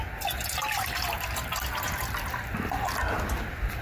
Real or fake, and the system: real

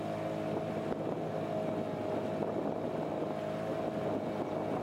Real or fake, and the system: real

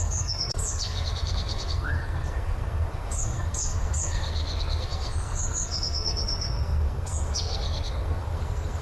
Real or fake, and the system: fake, codec, SNAC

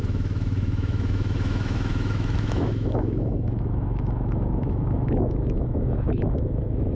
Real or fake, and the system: fake, autoencoder, DAC-VAE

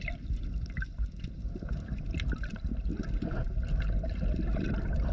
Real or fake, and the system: real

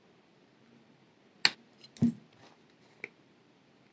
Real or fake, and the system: real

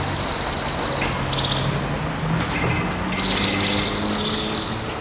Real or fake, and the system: real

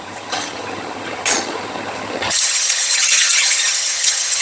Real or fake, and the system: fake, vocoder, HiFi-GAN